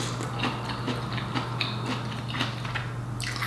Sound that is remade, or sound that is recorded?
recorded